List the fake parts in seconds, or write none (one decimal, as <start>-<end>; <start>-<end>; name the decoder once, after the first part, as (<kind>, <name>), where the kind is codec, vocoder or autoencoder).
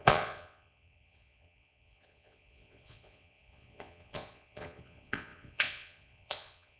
0.0-6.8 (vocoder, Vocos)